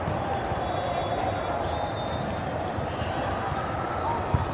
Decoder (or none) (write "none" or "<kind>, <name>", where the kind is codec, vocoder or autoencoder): none